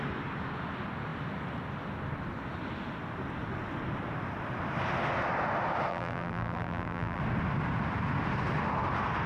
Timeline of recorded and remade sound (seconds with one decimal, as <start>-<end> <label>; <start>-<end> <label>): 0.0-5.9 recorded; 5.9-7.2 remade; 7.2-9.3 recorded